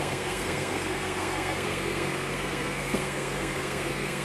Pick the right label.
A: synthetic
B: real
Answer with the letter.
A